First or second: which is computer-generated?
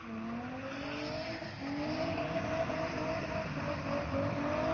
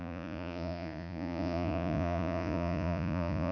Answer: second